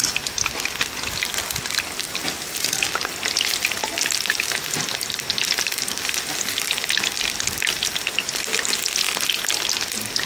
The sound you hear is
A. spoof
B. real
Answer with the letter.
B